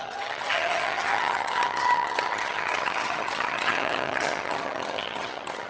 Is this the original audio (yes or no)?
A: no